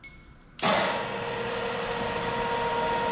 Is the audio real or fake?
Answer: real